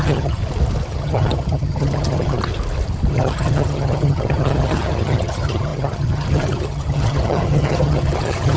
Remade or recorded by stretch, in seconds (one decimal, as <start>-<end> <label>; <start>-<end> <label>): 0.0-0.4 remade; 0.4-0.9 recorded; 0.9-2.5 remade; 2.5-3.1 recorded; 3.1-8.6 remade

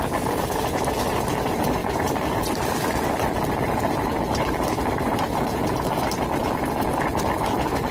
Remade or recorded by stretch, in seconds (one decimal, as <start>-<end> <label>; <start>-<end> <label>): 0.0-6.4 remade; 6.4-7.4 recorded; 7.4-7.9 remade

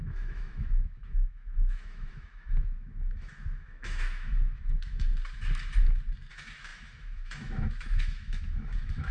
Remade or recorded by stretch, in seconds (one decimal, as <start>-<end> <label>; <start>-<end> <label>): 0.0-5.1 remade; 5.1-6.3 recorded; 6.3-9.1 remade